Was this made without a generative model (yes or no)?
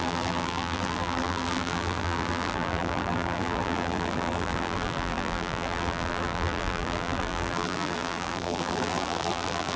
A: no